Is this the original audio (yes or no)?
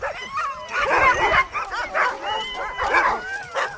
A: yes